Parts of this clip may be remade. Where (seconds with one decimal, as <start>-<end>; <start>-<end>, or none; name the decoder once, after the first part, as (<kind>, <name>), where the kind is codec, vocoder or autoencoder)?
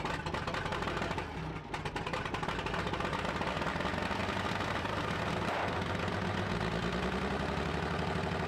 none